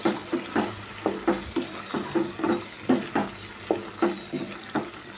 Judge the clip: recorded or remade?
recorded